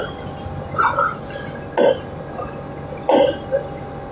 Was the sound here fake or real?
real